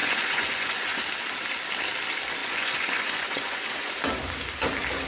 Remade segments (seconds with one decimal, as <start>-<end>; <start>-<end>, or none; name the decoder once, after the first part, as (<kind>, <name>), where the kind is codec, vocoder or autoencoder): 0.0-1.0 (vocoder, Vocos); 2.4-3.9